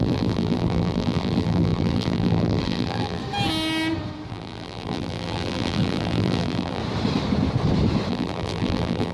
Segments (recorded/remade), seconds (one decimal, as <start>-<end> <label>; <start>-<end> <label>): 0.0-3.2 remade; 3.2-4.3 recorded; 4.3-6.8 remade; 6.8-8.1 recorded; 8.1-9.1 remade